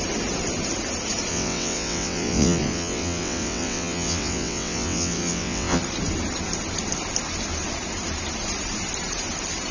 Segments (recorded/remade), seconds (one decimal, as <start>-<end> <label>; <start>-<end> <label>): 0.0-1.3 recorded; 1.3-5.8 remade; 5.8-9.7 recorded